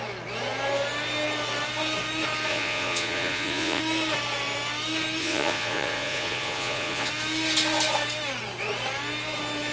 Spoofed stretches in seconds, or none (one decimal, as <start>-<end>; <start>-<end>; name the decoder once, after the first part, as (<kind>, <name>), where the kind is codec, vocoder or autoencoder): 2.5-3.8 (vocoder, Vocos); 5.2-7.1